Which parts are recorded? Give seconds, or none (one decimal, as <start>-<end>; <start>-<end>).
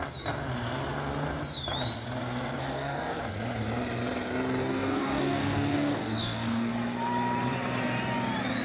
0.0-2.6; 3.2-4.6; 6.7-8.6